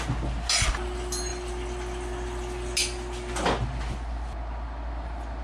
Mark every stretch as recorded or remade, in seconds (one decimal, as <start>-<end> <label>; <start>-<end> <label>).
0.0-5.4 recorded

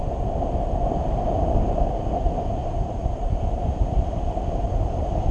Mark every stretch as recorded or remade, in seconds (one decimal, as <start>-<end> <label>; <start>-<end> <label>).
0.0-2.6 recorded; 2.6-5.3 remade

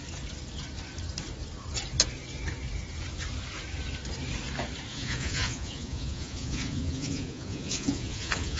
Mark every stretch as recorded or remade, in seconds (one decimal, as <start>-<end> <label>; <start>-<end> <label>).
0.0-4.9 recorded; 4.9-8.6 remade

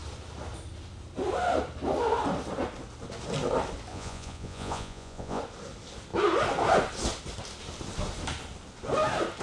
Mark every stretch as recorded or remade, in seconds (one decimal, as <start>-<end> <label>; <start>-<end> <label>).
0.0-3.9 recorded; 3.9-5.4 remade; 5.4-9.4 recorded

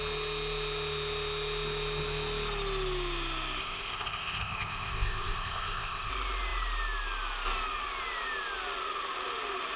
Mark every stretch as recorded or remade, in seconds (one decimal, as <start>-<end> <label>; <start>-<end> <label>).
0.0-3.6 recorded; 3.6-6.1 remade; 6.1-9.8 recorded